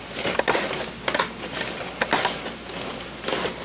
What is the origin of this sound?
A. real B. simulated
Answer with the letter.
A